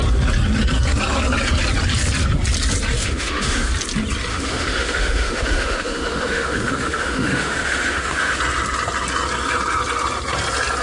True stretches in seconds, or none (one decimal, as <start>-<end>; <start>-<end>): 0.0-3.0; 3.7-4.3; 8.4-10.8